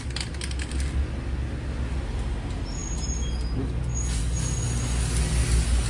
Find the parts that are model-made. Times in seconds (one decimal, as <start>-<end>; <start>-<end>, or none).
none